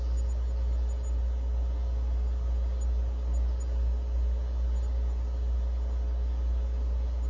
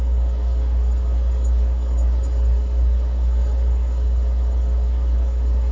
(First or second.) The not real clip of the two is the second